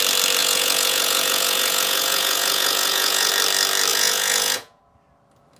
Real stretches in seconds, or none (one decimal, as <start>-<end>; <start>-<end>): 0.0-0.4; 3.3-3.9; 4.8-5.6